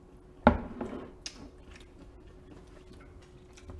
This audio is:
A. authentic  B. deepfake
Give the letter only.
A